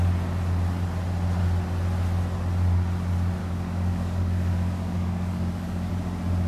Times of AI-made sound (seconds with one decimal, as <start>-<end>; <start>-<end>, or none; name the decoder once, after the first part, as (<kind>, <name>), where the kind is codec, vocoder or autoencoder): 3.4-5.9 (codec, DAC)